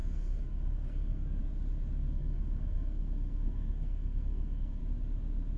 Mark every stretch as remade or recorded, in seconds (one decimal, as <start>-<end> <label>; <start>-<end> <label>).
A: 0.0-1.4 remade; 1.4-2.1 recorded; 2.1-4.8 remade; 4.8-5.6 recorded